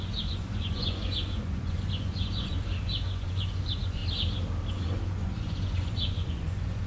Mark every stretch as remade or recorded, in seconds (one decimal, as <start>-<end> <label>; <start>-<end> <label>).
0.0-4.0 remade; 4.0-4.7 recorded; 4.7-6.9 remade